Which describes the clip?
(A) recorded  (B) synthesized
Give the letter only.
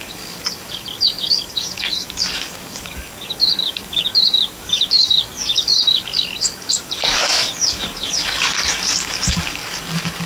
B